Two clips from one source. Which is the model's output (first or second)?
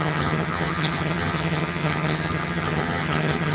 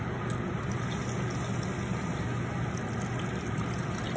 first